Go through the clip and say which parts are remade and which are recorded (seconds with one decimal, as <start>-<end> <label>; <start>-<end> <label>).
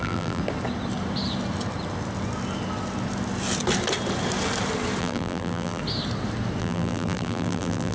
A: 0.0-0.4 remade; 0.4-5.0 recorded; 5.0-5.8 remade; 5.8-6.6 recorded; 6.6-7.9 remade